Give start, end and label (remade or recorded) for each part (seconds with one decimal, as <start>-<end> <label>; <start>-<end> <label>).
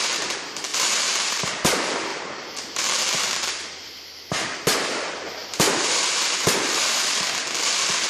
0.0-0.7 recorded; 0.7-1.5 remade; 1.5-2.1 recorded; 2.1-3.6 remade; 3.6-5.4 recorded; 5.4-7.1 remade; 7.1-8.1 recorded